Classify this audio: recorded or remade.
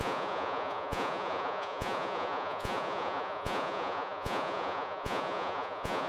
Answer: remade